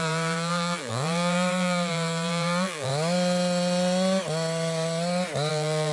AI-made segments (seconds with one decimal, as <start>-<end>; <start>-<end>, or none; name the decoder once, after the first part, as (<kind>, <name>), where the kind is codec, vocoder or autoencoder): 0.0-2.9 (vocoder, BigVGAN v2); 5.5-5.9